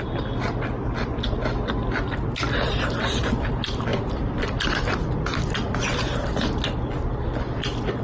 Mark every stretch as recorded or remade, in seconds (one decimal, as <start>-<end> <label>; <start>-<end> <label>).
0.0-3.9 recorded; 3.9-4.7 remade; 4.7-8.0 recorded